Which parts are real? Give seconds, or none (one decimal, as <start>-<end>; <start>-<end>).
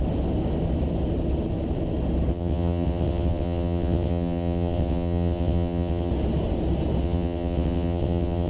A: 0.0-2.3; 6.1-7.0